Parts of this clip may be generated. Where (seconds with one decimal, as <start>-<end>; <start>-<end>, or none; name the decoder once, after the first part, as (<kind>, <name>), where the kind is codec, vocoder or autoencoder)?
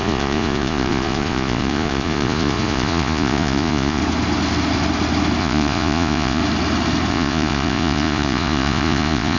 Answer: 0.0-4.0 (vocoder, Vocos); 5.4-6.4; 7.1-9.4